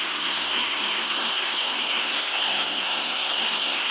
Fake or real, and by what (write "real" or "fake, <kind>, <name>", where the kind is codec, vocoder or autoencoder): fake, codec, SNAC